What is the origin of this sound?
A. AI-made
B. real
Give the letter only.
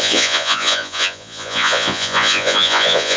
A